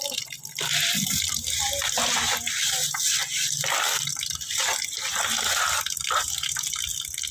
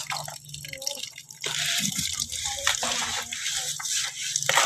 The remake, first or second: second